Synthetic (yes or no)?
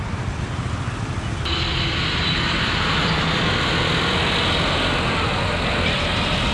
no